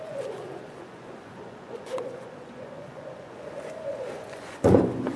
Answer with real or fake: fake